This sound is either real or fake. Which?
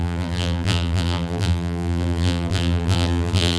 fake